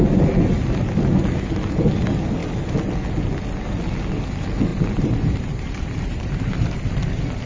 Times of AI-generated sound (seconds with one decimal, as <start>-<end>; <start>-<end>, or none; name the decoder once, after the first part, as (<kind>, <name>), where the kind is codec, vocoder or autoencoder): 4.7-7.1 (vocoder, BigVGAN v2)